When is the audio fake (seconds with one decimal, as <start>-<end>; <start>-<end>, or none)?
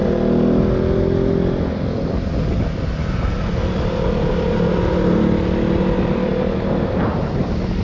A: none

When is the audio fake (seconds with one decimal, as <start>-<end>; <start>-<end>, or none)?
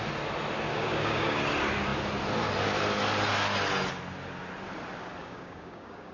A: 0.7-1.4; 5.2-6.1